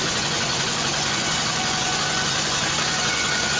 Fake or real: fake